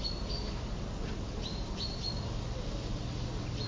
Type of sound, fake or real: real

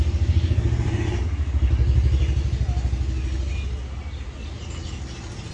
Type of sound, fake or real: real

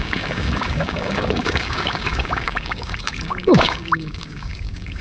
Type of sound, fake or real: fake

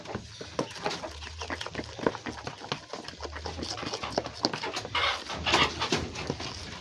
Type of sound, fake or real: real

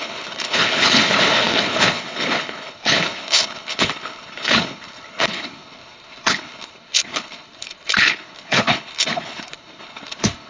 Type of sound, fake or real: fake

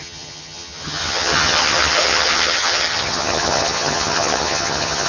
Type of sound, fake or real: fake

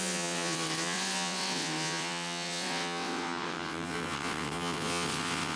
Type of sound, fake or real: fake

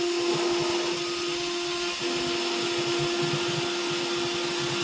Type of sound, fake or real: real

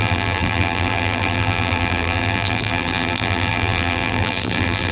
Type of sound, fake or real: fake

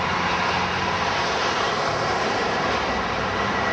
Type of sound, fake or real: fake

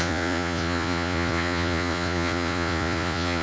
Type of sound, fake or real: fake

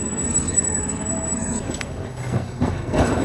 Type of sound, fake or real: fake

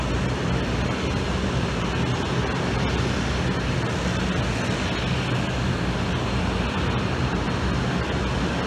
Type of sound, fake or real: real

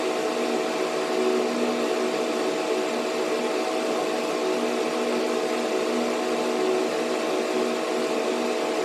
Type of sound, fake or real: real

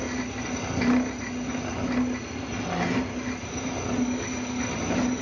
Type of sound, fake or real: real